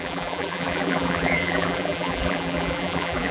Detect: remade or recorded remade